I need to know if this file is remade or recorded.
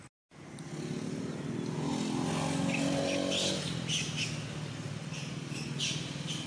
recorded